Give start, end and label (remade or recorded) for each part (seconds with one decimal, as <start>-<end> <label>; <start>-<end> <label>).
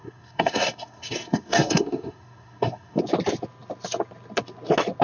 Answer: 0.0-3.0 remade; 3.0-5.0 recorded